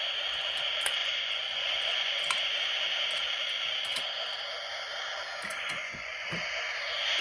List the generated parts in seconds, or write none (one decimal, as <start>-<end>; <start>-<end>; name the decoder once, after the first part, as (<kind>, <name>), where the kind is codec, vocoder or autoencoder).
1.0-2.2 (vocoder, Vocos); 5.5-6.3